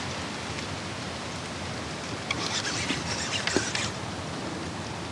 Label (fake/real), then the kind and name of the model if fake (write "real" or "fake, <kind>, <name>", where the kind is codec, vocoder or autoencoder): real